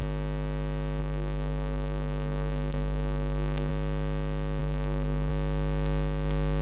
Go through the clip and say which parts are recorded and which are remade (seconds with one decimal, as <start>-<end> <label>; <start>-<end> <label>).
0.0-1.0 recorded; 1.0-3.7 remade; 3.7-4.6 recorded; 4.6-5.3 remade; 5.3-6.6 recorded